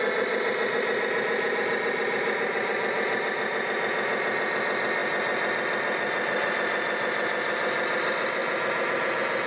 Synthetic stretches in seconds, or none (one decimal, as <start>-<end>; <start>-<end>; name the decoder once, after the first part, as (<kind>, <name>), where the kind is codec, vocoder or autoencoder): none